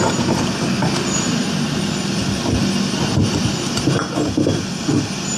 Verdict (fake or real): real